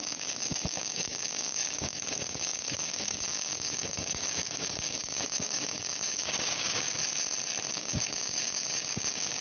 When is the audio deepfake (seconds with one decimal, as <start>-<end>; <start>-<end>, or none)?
0.0-7.0; 7.7-9.4